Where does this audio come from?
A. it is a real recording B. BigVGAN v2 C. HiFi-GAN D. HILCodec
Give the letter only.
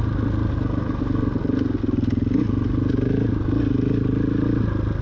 A